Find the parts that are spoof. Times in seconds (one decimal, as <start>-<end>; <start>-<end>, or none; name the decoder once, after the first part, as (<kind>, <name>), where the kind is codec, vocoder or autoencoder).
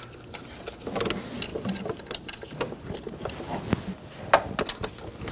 none